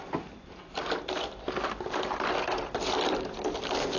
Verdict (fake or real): real